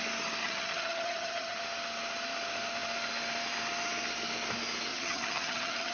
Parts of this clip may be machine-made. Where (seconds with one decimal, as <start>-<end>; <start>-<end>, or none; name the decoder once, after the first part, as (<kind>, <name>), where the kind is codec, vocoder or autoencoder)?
0.4-1.6 (vocoder, HiFi-GAN); 4.9-5.9